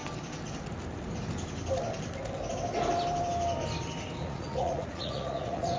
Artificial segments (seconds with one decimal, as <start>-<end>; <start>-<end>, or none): 4.2-5.8